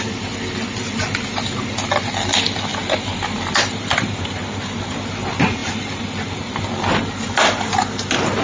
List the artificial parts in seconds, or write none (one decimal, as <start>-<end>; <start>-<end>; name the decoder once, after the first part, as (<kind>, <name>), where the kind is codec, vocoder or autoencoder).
2.7-4.2 (vocoder, BigVGAN v2)

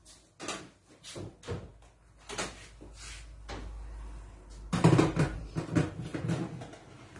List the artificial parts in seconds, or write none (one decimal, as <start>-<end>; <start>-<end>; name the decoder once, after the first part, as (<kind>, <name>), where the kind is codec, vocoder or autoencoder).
none

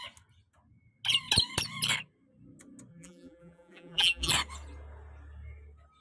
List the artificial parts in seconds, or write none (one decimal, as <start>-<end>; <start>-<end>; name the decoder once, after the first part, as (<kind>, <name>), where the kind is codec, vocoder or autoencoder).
2.9-4.3 (vocoder, BigVGAN v2)

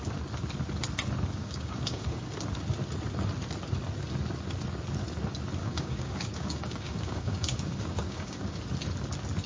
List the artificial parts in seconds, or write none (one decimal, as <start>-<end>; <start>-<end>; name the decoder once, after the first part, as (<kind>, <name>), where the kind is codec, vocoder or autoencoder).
1.4-2.2 (codec, DAC); 5.6-8.6

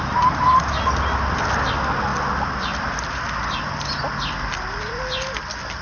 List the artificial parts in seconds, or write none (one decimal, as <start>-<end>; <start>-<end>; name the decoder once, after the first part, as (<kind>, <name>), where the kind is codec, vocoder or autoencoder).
none

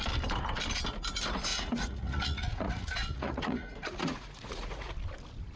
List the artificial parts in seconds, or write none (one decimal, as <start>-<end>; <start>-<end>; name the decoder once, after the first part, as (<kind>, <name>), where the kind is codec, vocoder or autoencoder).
1.5-4.9 (vocoder, Vocos)

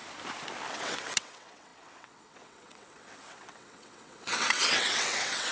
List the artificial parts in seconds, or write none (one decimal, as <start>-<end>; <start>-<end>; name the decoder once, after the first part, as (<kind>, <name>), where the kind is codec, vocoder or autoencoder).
0.7-5.5 (vocoder, WaveNeXt)

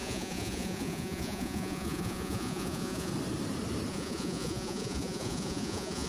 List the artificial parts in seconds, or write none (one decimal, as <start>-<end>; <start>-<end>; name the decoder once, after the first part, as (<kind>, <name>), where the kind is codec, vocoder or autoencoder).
0.0-3.1 (vocoder, Vocos); 3.9-6.1